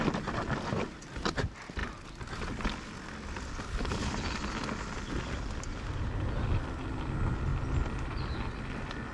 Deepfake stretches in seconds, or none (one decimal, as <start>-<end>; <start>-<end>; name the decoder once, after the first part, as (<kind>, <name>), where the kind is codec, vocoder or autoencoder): none